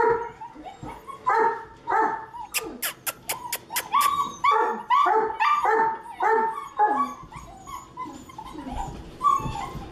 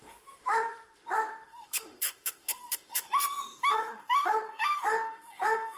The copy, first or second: second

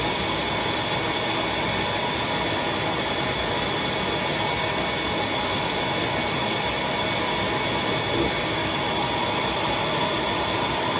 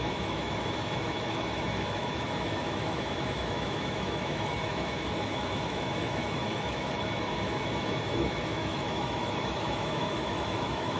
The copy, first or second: second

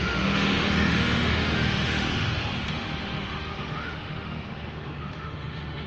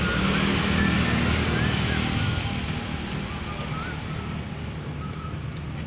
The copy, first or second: first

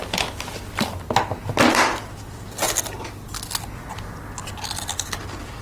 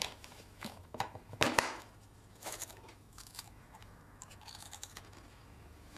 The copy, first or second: second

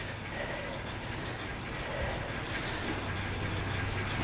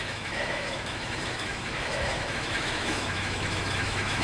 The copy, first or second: second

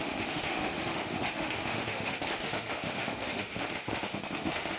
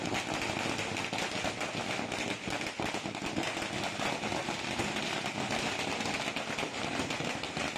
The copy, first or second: first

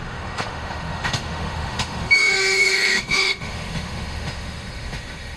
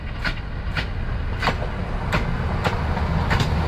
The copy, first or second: first